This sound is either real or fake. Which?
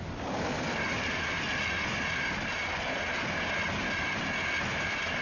real